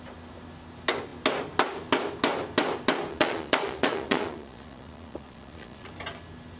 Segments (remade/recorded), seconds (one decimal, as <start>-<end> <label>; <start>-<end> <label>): 0.0-3.1 recorded; 3.1-5.9 remade; 5.9-6.6 recorded